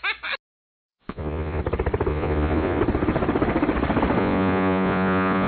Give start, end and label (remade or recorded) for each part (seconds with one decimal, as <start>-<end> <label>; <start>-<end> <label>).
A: 0.0-1.1 recorded; 1.1-1.6 remade; 1.6-2.1 recorded; 2.1-2.8 remade; 2.8-4.2 recorded; 4.2-5.5 remade